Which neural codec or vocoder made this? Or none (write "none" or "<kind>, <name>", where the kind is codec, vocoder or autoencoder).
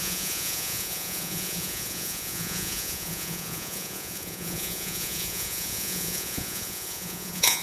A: vocoder, Vocos